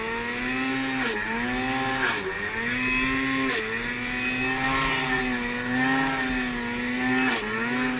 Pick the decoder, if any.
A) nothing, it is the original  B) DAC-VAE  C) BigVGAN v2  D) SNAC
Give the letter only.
A